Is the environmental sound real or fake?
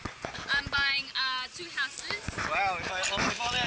real